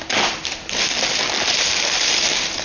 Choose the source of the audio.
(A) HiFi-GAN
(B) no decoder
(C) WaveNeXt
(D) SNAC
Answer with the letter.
B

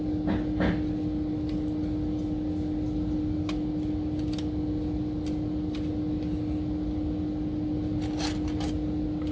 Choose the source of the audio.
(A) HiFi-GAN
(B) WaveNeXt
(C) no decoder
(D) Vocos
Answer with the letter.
C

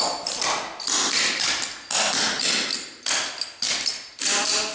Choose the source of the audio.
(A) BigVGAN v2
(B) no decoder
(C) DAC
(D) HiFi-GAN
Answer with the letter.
B